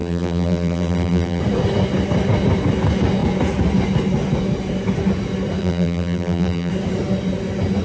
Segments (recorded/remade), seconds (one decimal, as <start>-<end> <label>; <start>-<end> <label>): 0.0-1.4 remade; 1.4-5.6 recorded; 5.6-6.7 remade; 6.7-7.8 recorded